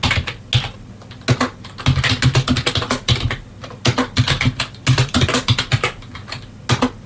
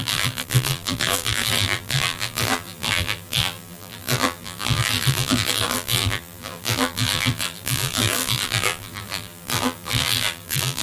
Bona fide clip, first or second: first